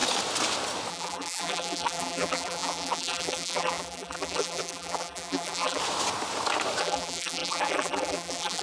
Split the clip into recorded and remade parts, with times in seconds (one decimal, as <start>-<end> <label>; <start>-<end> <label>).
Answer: 0.0-0.9 recorded; 0.9-5.8 remade; 5.8-6.8 recorded; 6.8-8.6 remade